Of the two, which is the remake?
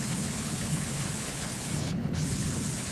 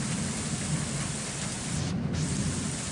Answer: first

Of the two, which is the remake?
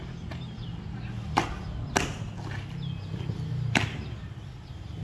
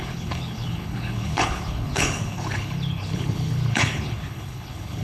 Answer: second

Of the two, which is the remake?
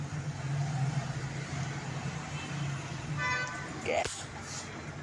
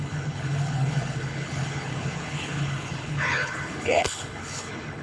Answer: second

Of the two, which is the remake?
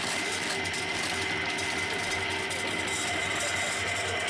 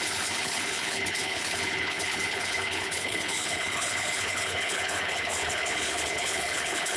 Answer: second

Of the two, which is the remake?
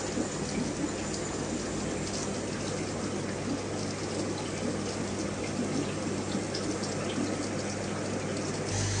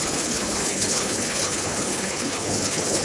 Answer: second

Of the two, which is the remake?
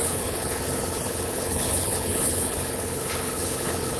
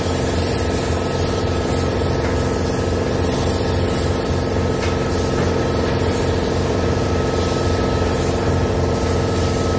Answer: first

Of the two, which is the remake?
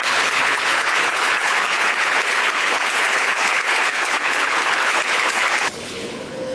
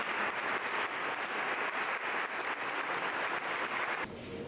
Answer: first